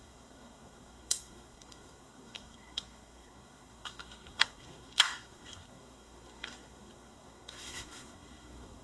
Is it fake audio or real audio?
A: fake